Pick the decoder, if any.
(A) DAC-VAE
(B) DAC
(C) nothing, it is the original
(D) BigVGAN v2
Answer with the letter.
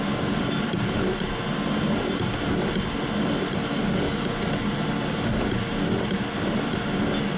C